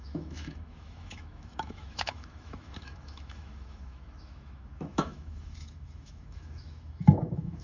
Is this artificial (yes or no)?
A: yes